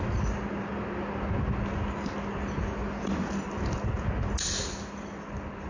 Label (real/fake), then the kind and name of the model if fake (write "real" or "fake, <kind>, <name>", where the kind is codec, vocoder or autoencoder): real